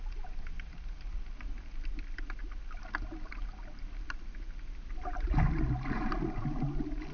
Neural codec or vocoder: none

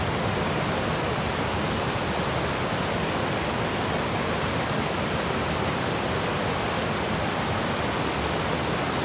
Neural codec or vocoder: none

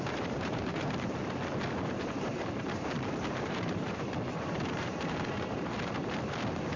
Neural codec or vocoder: vocoder, BigVGAN v2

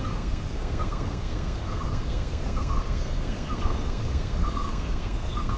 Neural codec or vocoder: codec, SNAC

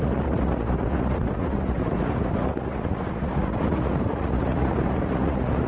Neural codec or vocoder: vocoder, Vocos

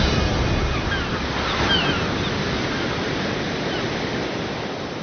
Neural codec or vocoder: none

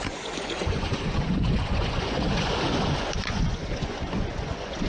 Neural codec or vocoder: vocoder, Vocos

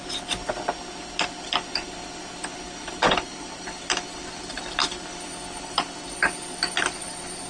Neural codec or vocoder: none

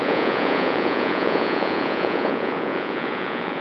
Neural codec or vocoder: vocoder, Vocos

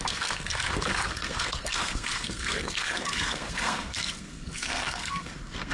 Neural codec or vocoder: codec, SNAC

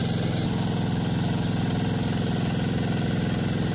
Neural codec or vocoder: none